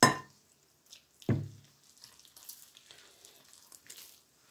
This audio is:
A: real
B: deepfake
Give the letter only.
A